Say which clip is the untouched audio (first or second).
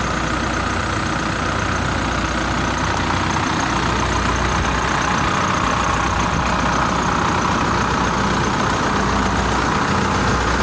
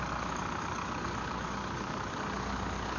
first